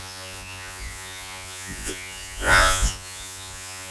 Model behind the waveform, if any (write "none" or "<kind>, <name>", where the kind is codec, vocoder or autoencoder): vocoder, Vocos